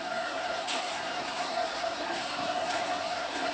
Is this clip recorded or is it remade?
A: remade